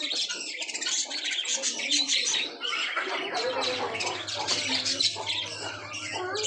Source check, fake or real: real